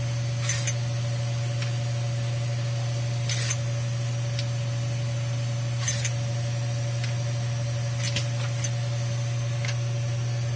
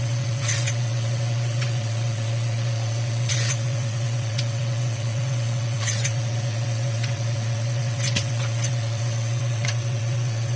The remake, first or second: second